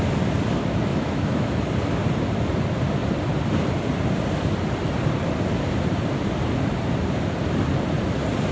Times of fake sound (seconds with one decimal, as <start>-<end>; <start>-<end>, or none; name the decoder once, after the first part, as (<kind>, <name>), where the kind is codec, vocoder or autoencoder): 0.9-1.6 (autoencoder, DAC-VAE)

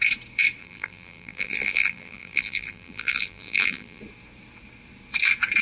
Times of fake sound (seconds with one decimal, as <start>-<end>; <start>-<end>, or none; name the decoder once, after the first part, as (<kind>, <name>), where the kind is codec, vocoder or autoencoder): 0.6-4.0 (vocoder, BigVGAN v2)